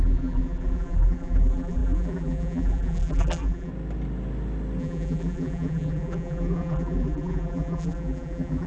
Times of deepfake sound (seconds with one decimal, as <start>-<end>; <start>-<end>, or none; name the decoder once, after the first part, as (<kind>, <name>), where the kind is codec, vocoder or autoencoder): 0.0-3.7 (vocoder, BigVGAN v2); 4.8-8.7